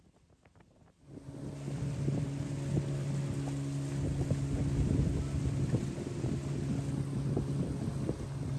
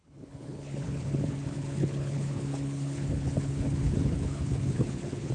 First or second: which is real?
first